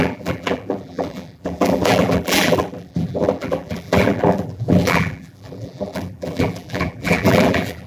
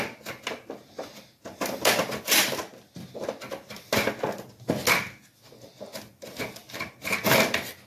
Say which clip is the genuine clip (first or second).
second